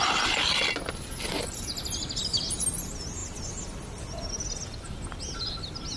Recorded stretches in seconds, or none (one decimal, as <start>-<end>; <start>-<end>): 0.0-6.0